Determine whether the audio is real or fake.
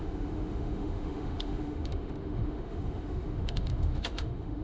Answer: fake